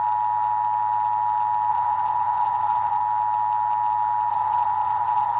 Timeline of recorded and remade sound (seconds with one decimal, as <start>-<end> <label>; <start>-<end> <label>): 0.0-1.7 recorded; 1.7-3.0 remade; 3.0-4.3 recorded; 4.3-5.4 remade